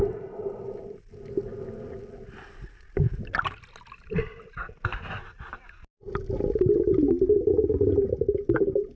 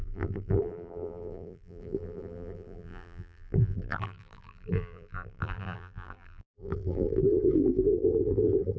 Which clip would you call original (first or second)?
first